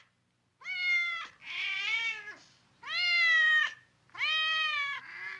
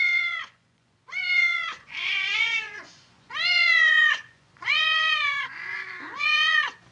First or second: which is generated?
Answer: second